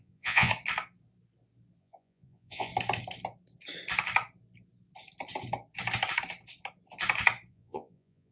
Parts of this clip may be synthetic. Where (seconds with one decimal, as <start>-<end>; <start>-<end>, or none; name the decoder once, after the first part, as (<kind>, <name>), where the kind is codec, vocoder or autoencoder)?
0.0-0.5 (vocoder, Vocos); 1.8-2.7; 7.5-8.3